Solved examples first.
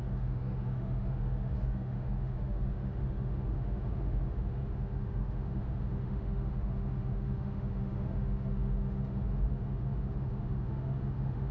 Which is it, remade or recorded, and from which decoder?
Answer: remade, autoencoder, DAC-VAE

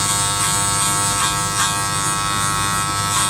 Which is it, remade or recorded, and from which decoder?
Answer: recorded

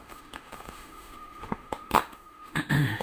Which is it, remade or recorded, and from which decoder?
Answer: remade, autoencoder, DAC-VAE